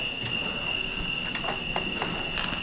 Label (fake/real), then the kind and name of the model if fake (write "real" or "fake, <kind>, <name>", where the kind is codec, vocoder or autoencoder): real